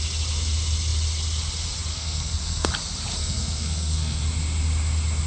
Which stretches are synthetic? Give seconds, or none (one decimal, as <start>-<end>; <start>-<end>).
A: 1.9-2.7; 3.1-4.2